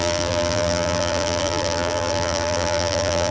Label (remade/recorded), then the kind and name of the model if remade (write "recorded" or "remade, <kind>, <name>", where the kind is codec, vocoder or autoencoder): remade, vocoder, BigVGAN v2